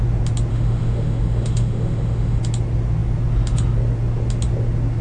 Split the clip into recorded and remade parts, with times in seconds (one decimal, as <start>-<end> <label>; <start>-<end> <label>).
0.0-0.5 recorded; 0.5-2.4 remade; 2.4-5.0 recorded